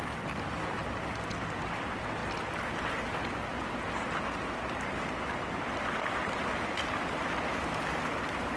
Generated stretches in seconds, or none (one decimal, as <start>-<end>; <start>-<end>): 0.0-2.2; 5.5-8.6